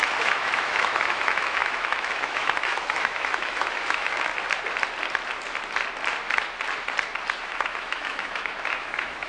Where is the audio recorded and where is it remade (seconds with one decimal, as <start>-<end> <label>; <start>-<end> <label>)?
0.0-4.3 remade; 4.3-7.4 recorded; 7.4-9.3 remade